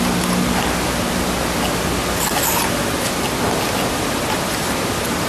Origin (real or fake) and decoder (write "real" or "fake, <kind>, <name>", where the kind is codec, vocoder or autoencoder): real